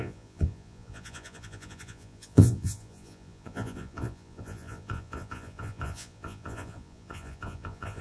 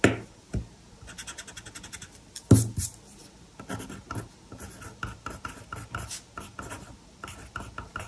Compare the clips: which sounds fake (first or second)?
first